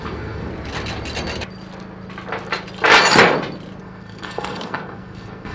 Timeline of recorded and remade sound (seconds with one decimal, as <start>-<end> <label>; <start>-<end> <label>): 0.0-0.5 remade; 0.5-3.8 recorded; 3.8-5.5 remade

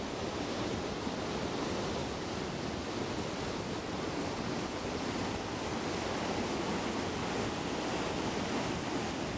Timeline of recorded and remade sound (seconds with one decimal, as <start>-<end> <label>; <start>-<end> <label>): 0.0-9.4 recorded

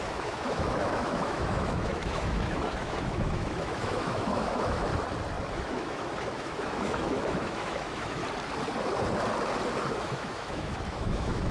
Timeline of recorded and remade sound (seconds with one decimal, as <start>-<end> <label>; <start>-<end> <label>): 0.0-4.9 remade; 4.9-5.5 recorded; 5.5-8.2 remade; 8.2-9.9 recorded; 9.9-11.5 remade